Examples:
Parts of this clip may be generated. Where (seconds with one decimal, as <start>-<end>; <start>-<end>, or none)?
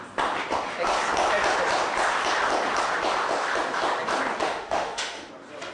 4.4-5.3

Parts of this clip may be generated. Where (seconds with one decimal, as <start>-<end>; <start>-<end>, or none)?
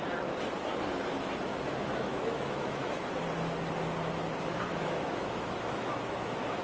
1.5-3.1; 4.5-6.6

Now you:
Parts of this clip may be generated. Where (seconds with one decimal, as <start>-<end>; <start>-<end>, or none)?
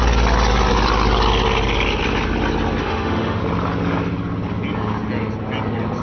2.8-3.4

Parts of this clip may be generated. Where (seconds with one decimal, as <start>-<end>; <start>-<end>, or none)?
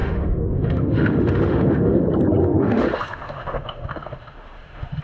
0.0-2.0; 2.4-5.0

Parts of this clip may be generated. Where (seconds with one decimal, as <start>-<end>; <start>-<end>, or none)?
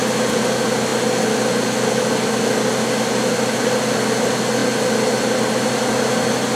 none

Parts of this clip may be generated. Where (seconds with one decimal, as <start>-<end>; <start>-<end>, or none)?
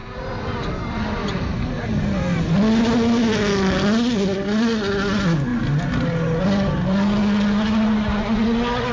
none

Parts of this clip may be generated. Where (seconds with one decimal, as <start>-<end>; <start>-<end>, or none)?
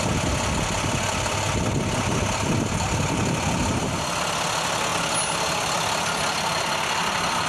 none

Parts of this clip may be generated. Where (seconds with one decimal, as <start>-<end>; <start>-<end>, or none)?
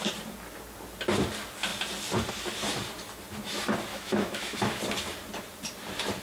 3.9-4.8